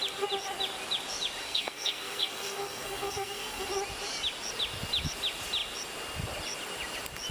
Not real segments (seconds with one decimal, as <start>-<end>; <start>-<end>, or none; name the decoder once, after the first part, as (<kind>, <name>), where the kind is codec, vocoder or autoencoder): 1.4-3.7 (codec, SNAC)